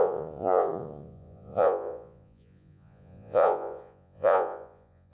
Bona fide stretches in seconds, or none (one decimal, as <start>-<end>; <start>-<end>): none